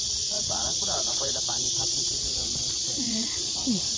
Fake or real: fake